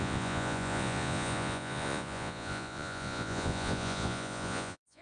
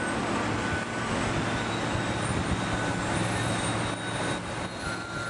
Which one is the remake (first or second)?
first